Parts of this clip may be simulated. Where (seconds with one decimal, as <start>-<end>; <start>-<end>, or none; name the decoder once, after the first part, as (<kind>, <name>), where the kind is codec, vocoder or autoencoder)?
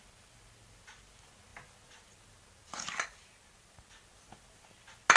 none